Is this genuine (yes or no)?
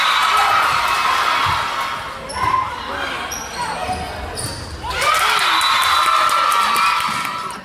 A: yes